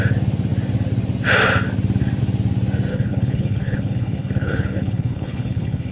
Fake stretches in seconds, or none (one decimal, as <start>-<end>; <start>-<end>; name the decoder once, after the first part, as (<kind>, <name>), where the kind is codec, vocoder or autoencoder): 2.9-5.9 (codec, HILCodec)